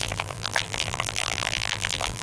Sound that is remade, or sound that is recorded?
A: remade